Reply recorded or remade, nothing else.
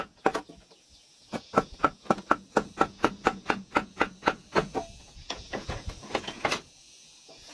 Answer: remade